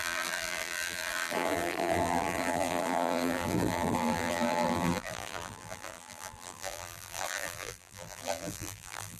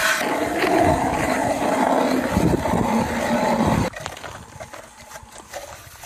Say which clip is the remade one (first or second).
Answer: first